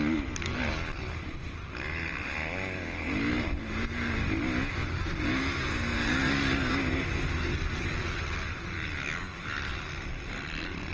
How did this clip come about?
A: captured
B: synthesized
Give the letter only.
A